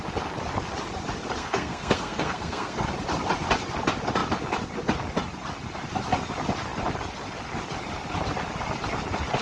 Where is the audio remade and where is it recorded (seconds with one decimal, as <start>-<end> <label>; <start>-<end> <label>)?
0.0-1.4 recorded; 1.4-2.8 remade; 2.8-9.4 recorded